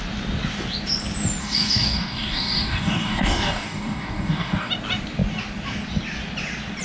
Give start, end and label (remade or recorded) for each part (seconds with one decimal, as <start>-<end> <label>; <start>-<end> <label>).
0.0-1.4 recorded; 1.4-4.7 remade; 4.7-6.8 recorded